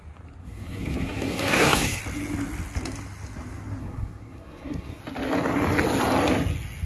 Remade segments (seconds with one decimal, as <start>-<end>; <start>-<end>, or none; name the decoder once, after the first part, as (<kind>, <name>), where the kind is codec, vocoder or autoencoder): 0.4-2.0 (codec, SNAC); 3.8-5.0

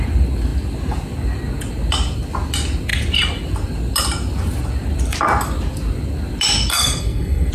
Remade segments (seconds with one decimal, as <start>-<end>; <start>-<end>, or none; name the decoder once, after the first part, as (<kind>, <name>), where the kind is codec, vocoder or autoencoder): 6.7-7.5 (codec, SNAC)

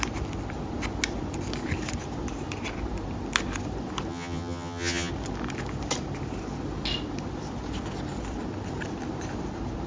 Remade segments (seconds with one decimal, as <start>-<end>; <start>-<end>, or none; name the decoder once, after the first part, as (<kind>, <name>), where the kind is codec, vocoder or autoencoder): 4.1-5.1 (vocoder, HiFi-GAN)

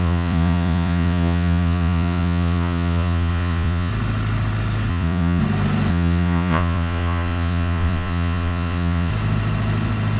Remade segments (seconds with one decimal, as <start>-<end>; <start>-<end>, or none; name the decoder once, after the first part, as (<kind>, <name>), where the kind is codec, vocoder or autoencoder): 0.0-3.9 (vocoder, Vocos); 4.9-5.4; 5.9-9.1

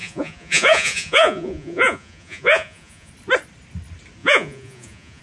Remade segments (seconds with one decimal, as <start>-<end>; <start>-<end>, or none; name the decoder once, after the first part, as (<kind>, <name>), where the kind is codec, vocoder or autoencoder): 0.0-3.1 (vocoder, Vocos); 4.2-5.2

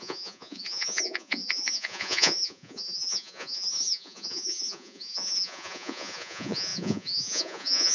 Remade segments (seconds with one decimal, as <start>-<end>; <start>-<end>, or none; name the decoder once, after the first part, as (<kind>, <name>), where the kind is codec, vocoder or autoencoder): 0.0-7.9 (vocoder, Vocos)

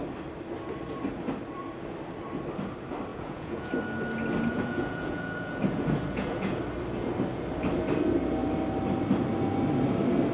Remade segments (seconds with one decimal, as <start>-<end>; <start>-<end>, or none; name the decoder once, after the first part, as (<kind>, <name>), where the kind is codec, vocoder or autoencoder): 3.1-3.7 (vocoder, Vocos); 4.5-6.6